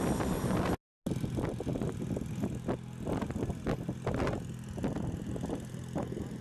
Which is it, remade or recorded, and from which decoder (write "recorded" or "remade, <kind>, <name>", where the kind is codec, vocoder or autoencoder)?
recorded